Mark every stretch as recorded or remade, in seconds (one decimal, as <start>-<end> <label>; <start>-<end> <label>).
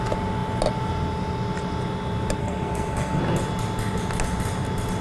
0.0-2.4 recorded; 2.4-3.2 remade; 3.2-5.0 recorded